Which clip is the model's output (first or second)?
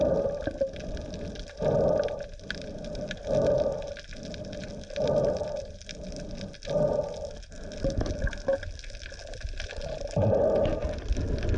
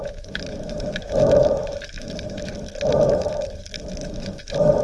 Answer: second